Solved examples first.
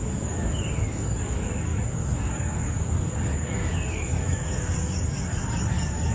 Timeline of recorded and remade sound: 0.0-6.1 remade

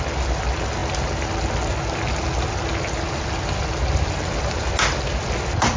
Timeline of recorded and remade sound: 0.0-5.8 recorded

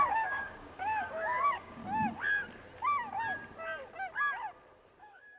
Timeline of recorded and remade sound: 0.0-1.8 remade; 1.8-5.0 recorded; 5.0-5.4 remade

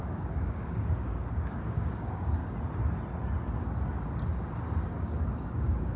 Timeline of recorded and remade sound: 0.0-2.4 remade; 2.4-4.8 recorded; 4.8-6.0 remade

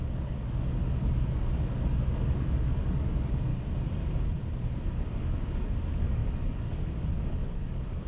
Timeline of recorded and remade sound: 0.0-3.5 remade; 3.5-5.2 recorded; 5.2-8.1 remade

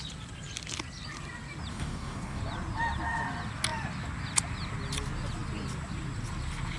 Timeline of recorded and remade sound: 0.0-1.7 recorded; 1.7-2.4 remade; 2.4-6.8 recorded